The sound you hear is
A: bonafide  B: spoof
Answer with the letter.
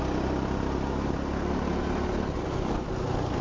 A